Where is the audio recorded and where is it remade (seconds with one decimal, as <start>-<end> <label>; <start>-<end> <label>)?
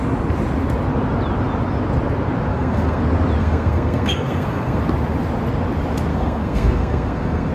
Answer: 0.0-2.5 recorded; 2.5-3.0 remade; 3.0-3.4 recorded; 3.4-4.8 remade; 4.8-6.1 recorded; 6.1-7.5 remade